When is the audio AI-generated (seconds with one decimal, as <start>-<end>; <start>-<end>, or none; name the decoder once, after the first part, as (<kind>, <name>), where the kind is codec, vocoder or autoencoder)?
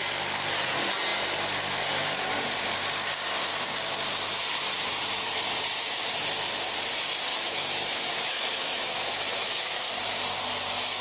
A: 7.3-10.0 (autoencoder, DAC-VAE)